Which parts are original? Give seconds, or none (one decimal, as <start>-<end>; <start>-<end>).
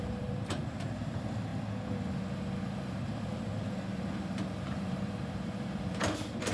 1.5-2.9